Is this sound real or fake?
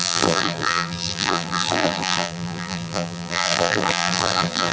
fake